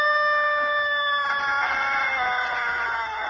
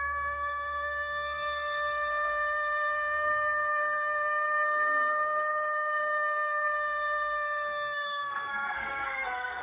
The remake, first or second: second